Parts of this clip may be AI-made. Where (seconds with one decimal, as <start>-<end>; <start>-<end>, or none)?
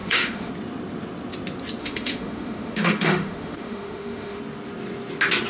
0.0-0.5; 1.8-4.4